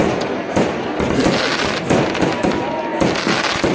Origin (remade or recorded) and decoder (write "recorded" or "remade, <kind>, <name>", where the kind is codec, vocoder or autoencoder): recorded